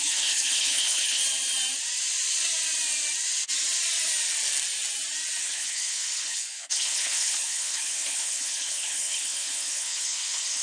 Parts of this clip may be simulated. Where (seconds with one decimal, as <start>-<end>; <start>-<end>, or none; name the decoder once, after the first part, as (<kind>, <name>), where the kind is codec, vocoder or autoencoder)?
0.0-1.2 (codec, HILCodec); 5.4-10.6

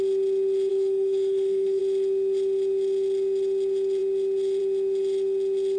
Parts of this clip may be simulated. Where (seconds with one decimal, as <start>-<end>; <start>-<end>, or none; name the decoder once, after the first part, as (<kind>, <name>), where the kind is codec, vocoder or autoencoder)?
0.7-1.8 (codec, SNAC)

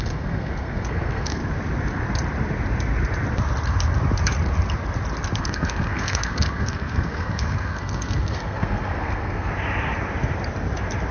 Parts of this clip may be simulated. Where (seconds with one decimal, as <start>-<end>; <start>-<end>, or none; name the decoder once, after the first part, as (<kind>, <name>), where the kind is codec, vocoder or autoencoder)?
0.0-1.4 (codec, SNAC); 5.4-9.5